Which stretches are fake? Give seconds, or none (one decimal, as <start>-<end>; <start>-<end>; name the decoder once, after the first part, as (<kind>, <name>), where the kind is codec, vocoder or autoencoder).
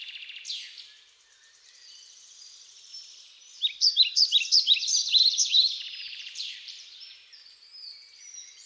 2.9-7.7 (vocoder, BigVGAN v2)